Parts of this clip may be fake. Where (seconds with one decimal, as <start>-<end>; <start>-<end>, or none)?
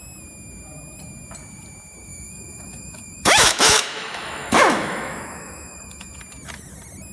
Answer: 2.1-6.2